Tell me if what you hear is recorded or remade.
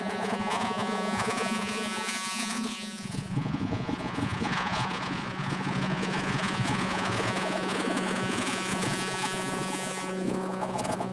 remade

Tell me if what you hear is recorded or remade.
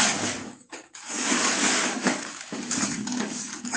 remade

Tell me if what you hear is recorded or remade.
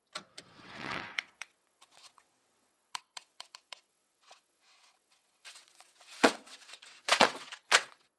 remade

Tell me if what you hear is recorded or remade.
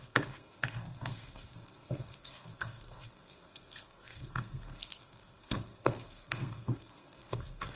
remade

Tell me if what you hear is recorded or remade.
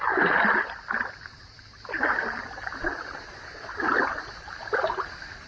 recorded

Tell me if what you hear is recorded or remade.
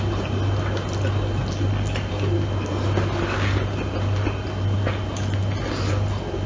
recorded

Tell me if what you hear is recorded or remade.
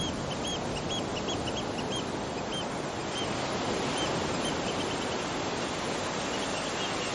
recorded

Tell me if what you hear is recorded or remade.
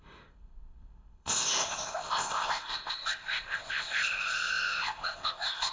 remade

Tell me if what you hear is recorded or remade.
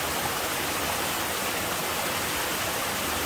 recorded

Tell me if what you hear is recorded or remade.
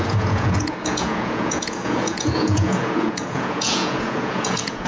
remade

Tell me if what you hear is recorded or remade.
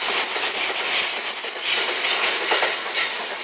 recorded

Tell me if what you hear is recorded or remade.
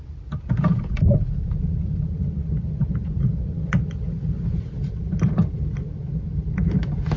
recorded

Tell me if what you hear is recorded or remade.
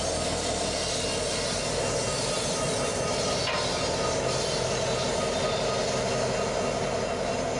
recorded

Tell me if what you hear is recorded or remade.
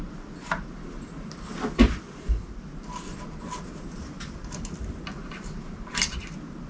recorded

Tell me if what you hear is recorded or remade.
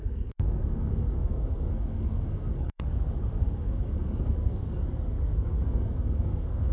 remade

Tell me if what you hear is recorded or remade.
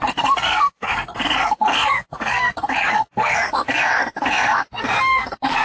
remade